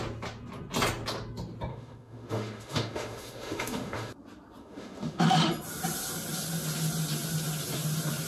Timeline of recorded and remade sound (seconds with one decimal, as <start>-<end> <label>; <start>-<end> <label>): 0.0-1.7 recorded; 1.7-4.1 remade; 4.1-4.6 recorded; 4.6-5.5 remade; 5.5-8.3 recorded